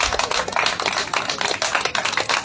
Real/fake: real